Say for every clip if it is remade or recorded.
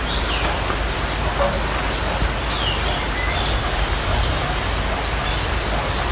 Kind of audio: recorded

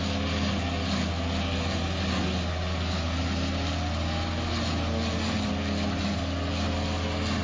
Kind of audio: recorded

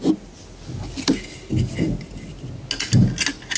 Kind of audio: recorded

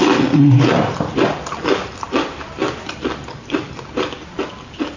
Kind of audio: recorded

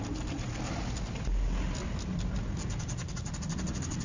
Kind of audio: recorded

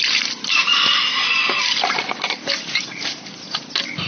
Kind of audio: recorded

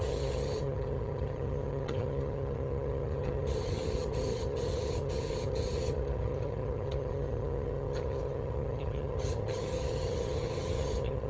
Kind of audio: remade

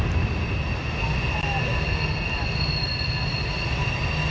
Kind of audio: recorded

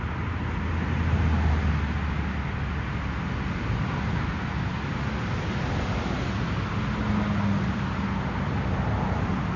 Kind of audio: recorded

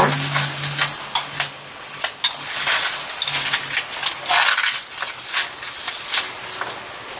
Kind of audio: recorded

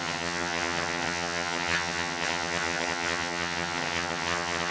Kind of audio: remade